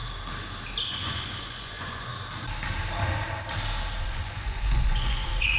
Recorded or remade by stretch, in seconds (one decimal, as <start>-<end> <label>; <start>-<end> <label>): 0.0-0.9 recorded; 0.9-2.1 remade; 2.1-4.0 recorded; 4.0-5.6 remade